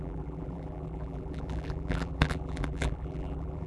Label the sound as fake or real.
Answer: fake